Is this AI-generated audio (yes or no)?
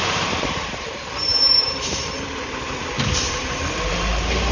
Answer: yes